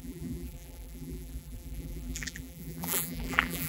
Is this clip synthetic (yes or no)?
yes